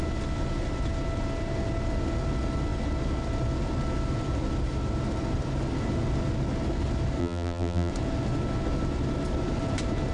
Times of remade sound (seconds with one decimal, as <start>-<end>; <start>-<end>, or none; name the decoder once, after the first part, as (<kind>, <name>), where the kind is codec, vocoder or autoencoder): 7.2-7.9 (vocoder, BigVGAN v2)